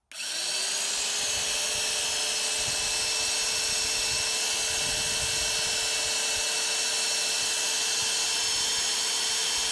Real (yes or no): yes